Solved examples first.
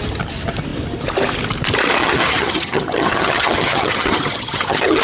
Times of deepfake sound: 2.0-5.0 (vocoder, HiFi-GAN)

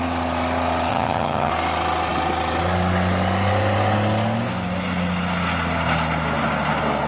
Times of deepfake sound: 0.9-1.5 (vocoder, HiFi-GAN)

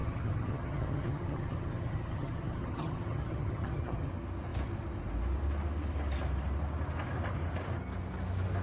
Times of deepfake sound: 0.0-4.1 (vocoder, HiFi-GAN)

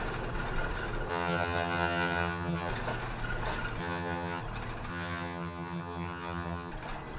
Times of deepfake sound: 1.1-2.7 (vocoder, HiFi-GAN); 3.8-4.4; 4.9-6.7

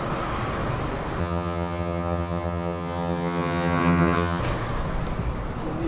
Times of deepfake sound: 1.2-4.4 (vocoder, HiFi-GAN)

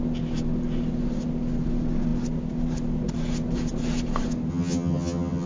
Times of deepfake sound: 4.5-5.5 (vocoder, HiFi-GAN)